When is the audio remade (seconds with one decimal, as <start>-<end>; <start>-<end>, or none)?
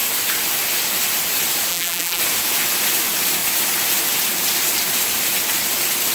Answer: 1.7-2.2